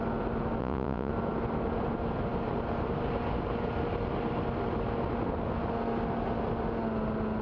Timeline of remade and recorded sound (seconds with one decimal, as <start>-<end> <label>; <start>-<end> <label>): 0.0-0.6 recorded; 0.6-1.1 remade; 1.1-7.4 recorded